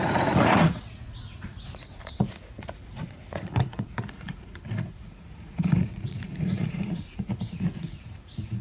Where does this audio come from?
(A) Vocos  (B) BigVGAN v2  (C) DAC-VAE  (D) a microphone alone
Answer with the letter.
A